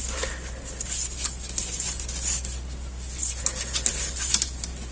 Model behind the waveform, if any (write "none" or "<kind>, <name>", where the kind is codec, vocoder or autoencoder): none